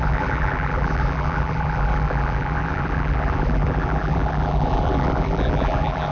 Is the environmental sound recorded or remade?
remade